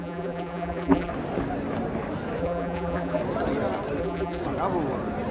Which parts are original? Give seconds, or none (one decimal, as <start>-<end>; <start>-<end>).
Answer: 1.1-2.4; 3.2-4.0; 4.4-5.3